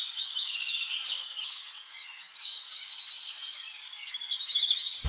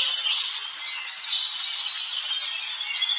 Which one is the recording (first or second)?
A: second